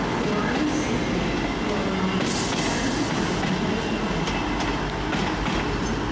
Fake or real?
real